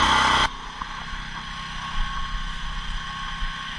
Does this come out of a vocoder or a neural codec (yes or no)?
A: no